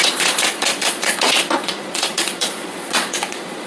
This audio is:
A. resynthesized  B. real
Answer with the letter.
A